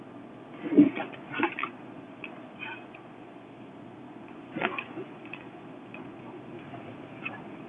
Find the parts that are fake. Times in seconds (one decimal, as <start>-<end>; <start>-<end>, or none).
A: 0.0-6.5